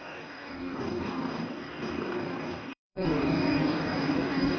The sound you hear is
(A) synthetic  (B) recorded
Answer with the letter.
A